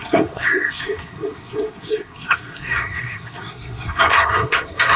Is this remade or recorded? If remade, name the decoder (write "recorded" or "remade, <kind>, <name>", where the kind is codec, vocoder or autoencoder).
remade, codec, SNAC